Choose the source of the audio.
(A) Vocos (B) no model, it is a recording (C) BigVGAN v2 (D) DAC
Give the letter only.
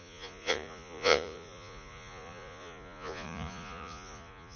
A